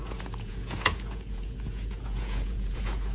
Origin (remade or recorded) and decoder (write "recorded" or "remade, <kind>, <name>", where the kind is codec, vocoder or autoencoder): remade, vocoder, Vocos